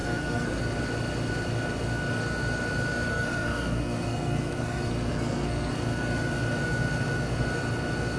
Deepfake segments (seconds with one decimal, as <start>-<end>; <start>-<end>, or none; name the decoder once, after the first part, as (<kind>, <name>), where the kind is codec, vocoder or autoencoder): 0.0-0.6 (codec, SNAC); 3.1-5.7